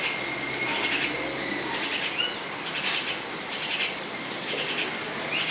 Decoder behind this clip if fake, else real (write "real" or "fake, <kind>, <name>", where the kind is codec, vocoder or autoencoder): real